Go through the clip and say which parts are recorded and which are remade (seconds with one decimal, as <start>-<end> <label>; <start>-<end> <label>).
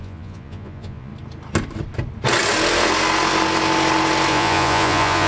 0.0-1.1 remade; 1.1-4.3 recorded; 4.3-5.3 remade